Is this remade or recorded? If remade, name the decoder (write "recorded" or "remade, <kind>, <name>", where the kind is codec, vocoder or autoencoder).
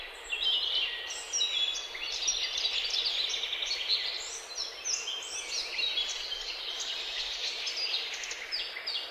recorded